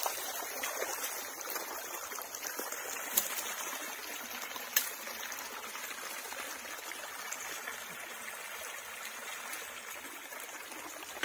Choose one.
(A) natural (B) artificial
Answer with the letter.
A